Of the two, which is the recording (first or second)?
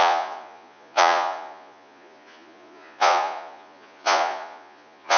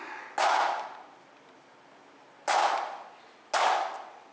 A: second